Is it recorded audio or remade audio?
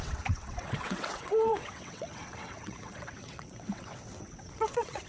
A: remade